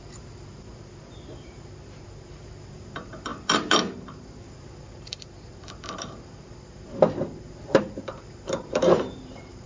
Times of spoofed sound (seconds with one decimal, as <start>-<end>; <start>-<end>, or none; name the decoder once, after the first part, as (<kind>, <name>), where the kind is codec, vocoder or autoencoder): 0.0-0.7 (vocoder, BigVGAN v2); 1.3-9.7